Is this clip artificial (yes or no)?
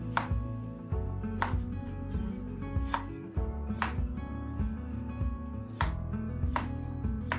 yes